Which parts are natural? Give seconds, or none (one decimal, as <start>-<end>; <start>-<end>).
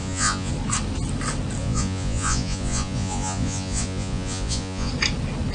0.5-1.6; 4.9-5.5